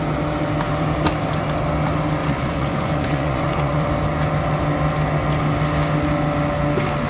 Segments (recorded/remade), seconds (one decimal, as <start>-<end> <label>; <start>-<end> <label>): 0.0-2.2 recorded; 2.2-3.9 remade; 3.9-7.1 recorded